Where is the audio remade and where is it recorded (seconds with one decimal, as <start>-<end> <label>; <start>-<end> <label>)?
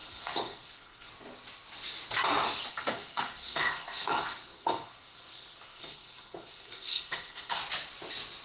0.0-1.1 remade; 1.1-2.7 recorded; 2.7-7.6 remade; 7.6-8.4 recorded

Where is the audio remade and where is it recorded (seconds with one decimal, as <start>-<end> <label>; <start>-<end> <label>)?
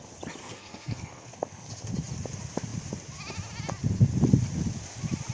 0.0-0.4 recorded; 0.4-1.7 remade; 1.7-5.3 recorded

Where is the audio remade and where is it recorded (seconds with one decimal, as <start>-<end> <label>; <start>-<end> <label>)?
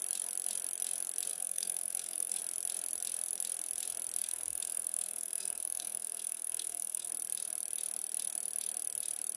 0.0-1.3 recorded; 1.3-2.4 remade; 2.4-4.2 recorded; 4.2-7.1 remade; 7.1-9.4 recorded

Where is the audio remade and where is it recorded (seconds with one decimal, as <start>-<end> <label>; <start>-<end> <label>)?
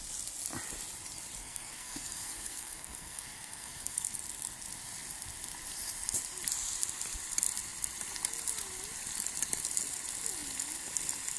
0.0-1.4 recorded; 1.4-4.2 remade; 4.2-11.4 recorded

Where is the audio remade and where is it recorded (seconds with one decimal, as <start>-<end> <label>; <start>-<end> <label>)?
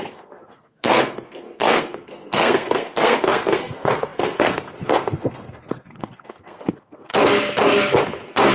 0.0-7.1 remade; 7.1-8.5 recorded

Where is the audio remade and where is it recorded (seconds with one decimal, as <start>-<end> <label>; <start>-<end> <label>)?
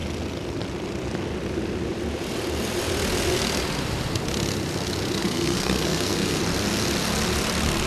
0.0-5.2 recorded; 5.2-6.4 remade; 6.4-7.9 recorded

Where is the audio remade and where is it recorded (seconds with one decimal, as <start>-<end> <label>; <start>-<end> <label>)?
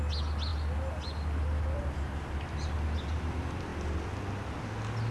0.0-5.1 recorded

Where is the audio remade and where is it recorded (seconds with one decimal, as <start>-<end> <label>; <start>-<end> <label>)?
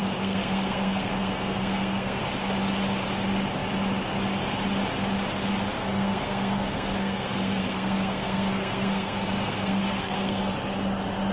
0.0-2.2 remade; 2.2-5.7 recorded; 5.7-10.5 remade; 10.5-11.3 recorded